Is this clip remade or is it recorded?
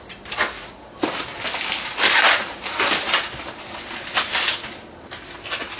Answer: recorded